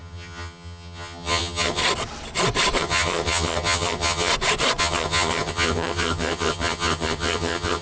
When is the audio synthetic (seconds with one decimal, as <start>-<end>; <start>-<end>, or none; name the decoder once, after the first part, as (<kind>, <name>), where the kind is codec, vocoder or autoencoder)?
0.0-1.8 (vocoder, HiFi-GAN); 2.8-4.3; 4.8-7.8